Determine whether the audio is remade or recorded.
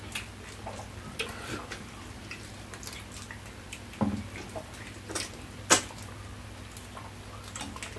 recorded